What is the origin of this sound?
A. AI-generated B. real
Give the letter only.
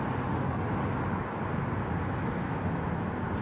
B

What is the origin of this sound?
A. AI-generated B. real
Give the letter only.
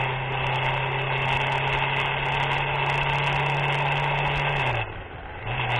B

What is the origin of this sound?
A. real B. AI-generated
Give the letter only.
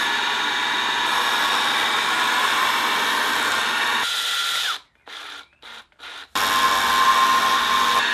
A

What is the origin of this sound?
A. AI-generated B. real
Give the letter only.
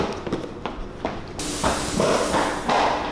B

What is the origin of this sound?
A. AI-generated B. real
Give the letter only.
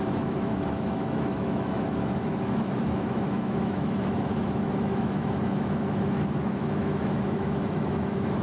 A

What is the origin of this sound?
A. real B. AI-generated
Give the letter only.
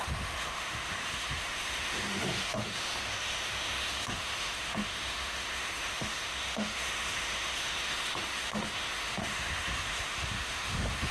B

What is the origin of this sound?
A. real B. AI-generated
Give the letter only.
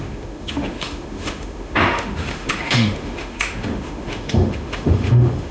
B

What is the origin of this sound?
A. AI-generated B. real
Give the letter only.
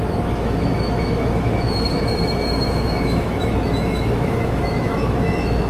A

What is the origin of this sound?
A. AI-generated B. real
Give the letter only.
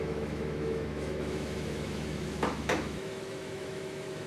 A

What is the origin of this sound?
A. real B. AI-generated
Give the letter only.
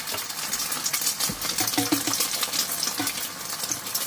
A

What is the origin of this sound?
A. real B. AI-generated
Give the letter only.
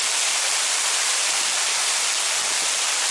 A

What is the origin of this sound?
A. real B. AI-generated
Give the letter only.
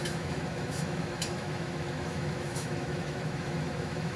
B